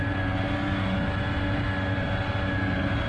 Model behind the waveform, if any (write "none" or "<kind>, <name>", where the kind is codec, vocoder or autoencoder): none